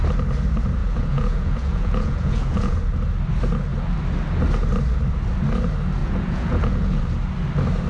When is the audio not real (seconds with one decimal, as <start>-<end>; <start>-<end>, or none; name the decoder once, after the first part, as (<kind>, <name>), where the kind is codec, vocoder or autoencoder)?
0.8-2.8 (vocoder, Vocos); 6.0-7.0

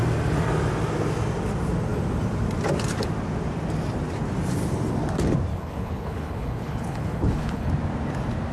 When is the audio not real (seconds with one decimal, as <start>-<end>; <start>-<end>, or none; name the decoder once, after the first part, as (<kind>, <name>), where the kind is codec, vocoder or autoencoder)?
5.5-7.7 (codec, HILCodec)